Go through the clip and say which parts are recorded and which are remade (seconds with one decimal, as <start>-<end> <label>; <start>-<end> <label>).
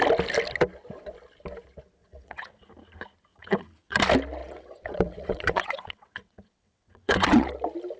0.0-2.0 recorded; 2.0-2.7 remade; 2.7-3.3 recorded; 3.3-4.0 remade; 4.0-4.4 recorded; 4.4-7.5 remade; 7.5-8.0 recorded